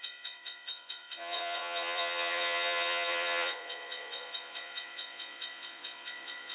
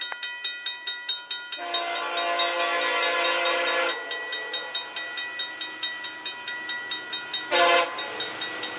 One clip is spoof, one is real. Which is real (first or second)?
second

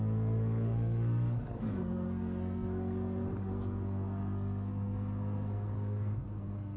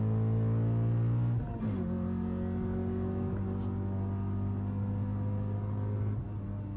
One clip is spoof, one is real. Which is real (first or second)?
second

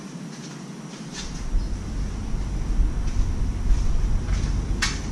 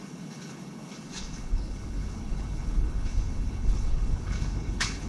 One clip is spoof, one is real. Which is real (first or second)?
first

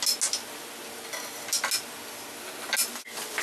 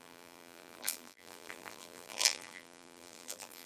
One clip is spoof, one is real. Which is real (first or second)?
first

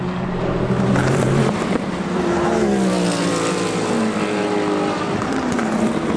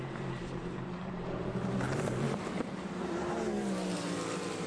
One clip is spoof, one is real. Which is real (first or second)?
first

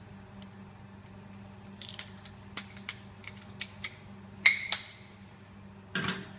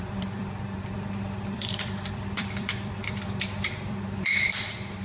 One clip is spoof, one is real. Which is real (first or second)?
first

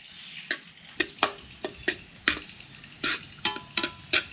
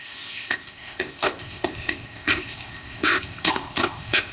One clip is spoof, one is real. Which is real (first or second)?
first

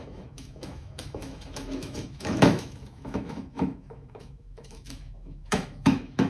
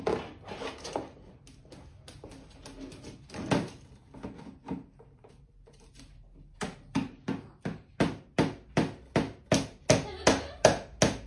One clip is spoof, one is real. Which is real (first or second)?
second